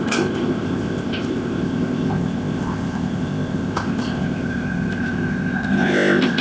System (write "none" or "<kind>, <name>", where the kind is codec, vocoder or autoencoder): codec, ZipCodec